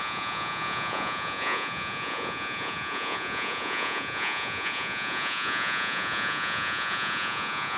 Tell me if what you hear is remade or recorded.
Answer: remade